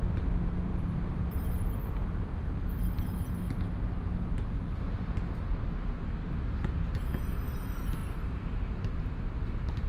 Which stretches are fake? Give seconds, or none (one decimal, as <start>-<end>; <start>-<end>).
8.0-8.7